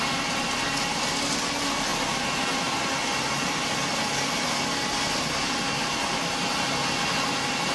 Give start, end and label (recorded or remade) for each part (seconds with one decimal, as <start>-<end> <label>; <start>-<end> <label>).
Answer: 0.0-7.7 recorded